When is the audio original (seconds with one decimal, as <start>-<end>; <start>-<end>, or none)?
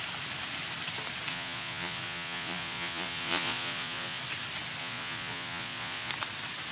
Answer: 0.0-1.3; 4.2-4.8; 6.1-6.7